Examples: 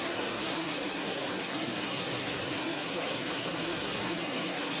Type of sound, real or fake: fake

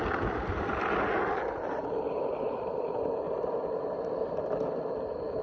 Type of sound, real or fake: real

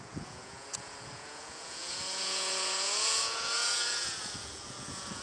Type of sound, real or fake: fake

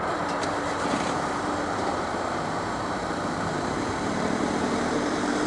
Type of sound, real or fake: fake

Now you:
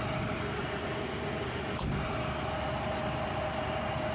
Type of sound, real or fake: real